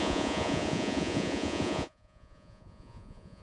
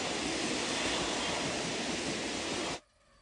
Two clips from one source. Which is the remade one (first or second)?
first